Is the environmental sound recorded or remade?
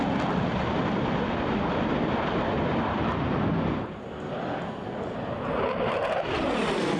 recorded